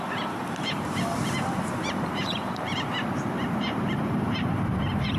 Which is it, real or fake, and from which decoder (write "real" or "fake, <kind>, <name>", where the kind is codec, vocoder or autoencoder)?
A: fake, vocoder, BigVGAN v2